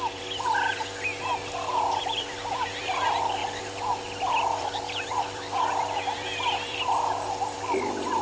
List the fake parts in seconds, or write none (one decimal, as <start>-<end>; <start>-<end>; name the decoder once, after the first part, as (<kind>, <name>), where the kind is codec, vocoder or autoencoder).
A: 0.0-1.1 (vocoder, BigVGAN v2); 2.0-3.4; 4.3-8.2